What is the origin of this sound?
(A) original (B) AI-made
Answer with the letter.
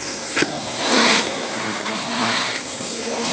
B